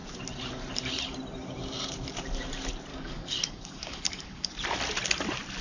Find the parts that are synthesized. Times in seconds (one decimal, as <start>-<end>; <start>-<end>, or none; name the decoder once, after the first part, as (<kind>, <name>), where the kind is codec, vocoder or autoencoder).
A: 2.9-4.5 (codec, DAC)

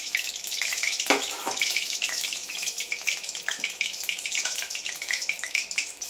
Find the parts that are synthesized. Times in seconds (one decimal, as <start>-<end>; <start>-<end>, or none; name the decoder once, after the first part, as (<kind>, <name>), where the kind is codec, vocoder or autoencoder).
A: 0.0-6.1 (autoencoder, DAC-VAE)

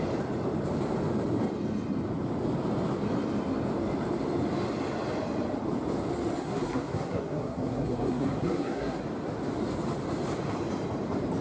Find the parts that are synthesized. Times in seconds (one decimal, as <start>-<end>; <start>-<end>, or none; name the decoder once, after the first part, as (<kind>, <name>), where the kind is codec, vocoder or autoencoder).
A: 6.4-9.0 (codec, SNAC)

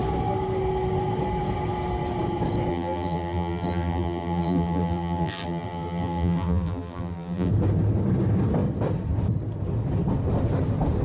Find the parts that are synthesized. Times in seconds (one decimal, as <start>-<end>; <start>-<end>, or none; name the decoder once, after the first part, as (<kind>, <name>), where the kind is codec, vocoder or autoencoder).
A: 2.7-7.5 (vocoder, BigVGAN v2)

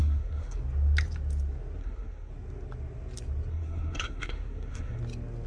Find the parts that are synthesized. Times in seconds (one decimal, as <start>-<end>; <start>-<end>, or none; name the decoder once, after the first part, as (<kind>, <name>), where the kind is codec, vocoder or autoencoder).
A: 0.0-0.6 (codec, SNAC); 1.8-2.3; 3.5-5.0